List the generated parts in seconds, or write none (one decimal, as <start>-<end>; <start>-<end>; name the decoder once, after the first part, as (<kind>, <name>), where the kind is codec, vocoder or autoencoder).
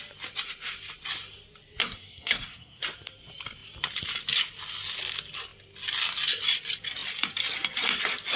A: 1.8-2.8 (codec, SNAC)